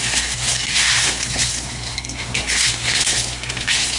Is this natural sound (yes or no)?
no